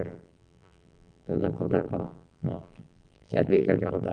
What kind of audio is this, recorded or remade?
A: remade